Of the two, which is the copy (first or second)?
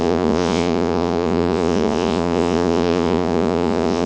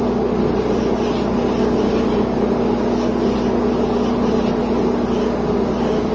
first